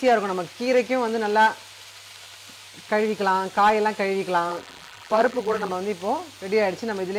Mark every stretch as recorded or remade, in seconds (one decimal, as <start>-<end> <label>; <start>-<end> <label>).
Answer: 0.0-4.5 recorded; 4.5-5.7 remade; 5.7-7.2 recorded